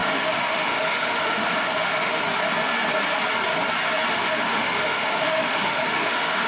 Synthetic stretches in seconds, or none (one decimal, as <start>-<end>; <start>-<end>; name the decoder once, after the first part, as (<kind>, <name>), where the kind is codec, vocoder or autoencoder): 0.0-2.2 (autoencoder, DAC-VAE); 4.1-6.5